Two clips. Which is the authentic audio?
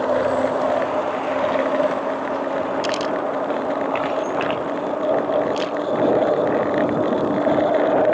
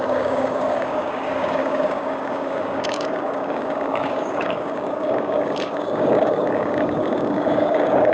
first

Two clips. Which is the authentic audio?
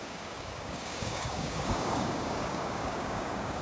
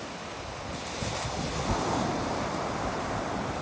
second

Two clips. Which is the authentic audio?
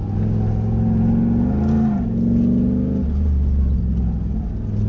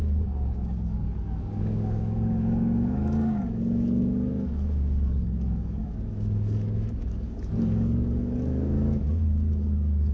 first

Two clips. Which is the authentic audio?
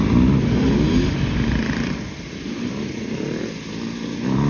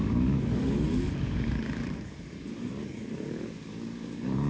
first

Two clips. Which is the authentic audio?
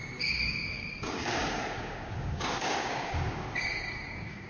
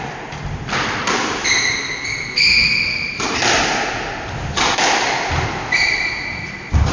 second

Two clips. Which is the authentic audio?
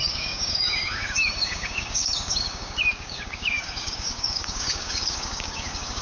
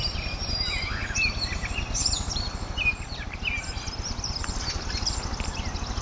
second